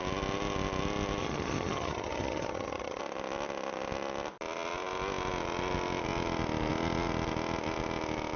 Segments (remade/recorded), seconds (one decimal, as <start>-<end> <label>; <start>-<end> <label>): 0.0-1.2 recorded; 1.2-3.0 remade; 3.0-8.4 recorded